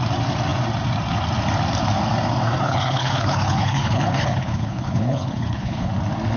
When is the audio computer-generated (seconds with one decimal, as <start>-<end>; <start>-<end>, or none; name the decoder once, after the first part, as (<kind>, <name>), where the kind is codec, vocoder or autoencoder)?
2.6-5.9 (codec, HILCodec)